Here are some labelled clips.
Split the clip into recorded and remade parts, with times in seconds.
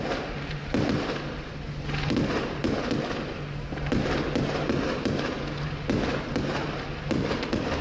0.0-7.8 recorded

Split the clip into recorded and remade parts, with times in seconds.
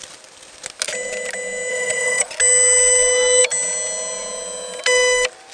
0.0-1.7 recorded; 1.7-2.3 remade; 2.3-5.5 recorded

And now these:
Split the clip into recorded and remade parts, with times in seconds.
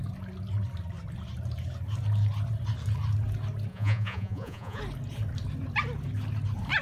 0.0-3.7 recorded; 3.7-4.8 remade; 4.8-6.8 recorded